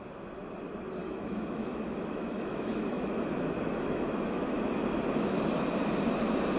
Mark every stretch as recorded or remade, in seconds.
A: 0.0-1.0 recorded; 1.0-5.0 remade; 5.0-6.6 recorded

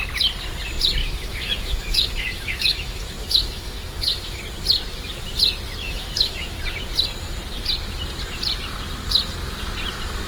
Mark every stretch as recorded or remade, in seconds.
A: 0.0-1.0 recorded; 1.0-4.4 remade; 4.4-5.8 recorded; 5.8-6.6 remade; 6.6-10.3 recorded

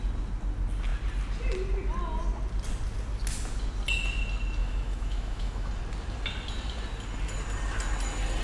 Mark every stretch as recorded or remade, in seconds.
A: 0.0-4.6 recorded; 4.6-5.7 remade; 5.7-8.4 recorded